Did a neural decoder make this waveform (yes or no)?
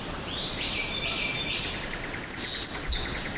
no